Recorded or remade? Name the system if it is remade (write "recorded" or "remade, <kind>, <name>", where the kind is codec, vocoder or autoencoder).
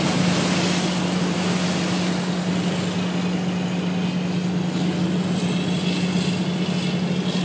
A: recorded